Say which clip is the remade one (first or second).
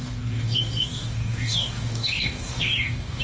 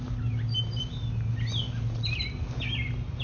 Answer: first